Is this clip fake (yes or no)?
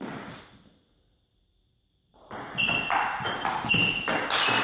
no